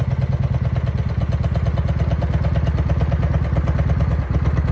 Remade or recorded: recorded